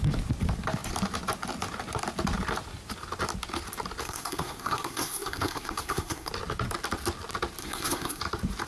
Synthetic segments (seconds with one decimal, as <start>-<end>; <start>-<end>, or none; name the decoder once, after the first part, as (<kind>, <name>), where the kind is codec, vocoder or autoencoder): 4.0-6.3 (codec, SNAC); 7.6-8.2

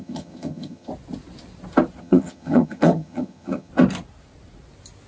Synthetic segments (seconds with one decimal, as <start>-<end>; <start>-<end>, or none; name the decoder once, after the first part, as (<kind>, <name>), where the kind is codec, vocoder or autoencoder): 0.0-0.9 (vocoder, HiFi-GAN); 2.0-3.7

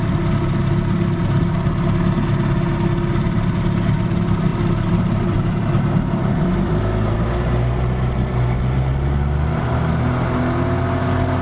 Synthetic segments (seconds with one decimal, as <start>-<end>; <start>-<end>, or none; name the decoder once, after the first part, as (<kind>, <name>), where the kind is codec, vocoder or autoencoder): 4.5-6.8 (vocoder, BigVGAN v2)

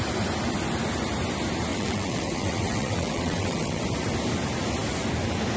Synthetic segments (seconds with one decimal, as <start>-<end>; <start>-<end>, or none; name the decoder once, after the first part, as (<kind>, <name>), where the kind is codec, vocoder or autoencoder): 1.7-3.8 (vocoder, WaveNeXt)

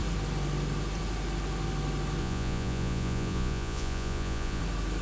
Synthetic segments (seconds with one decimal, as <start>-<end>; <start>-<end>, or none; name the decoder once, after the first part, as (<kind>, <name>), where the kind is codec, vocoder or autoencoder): 2.2-4.6 (vocoder, Vocos)

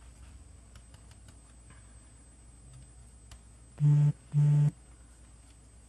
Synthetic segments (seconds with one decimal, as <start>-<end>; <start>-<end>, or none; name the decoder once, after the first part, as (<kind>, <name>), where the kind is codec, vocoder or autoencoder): none

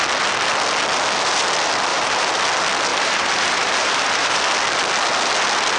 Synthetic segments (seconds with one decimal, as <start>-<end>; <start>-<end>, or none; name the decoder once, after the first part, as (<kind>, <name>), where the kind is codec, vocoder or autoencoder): 1.9-2.4 (vocoder, BigVGAN v2); 2.9-4.4